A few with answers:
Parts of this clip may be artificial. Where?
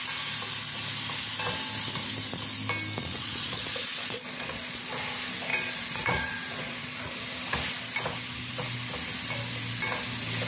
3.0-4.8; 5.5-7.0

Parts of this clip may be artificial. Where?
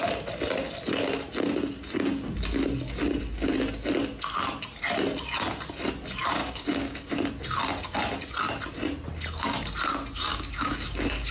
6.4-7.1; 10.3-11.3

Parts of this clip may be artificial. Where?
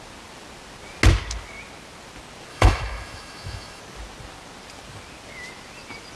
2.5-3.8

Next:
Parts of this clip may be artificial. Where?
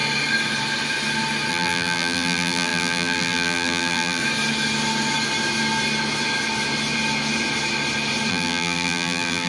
1.5-4.2; 8.3-9.5